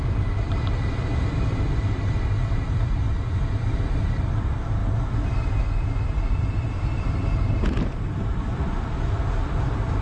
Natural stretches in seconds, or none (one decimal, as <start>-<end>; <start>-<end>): 4.8-6.3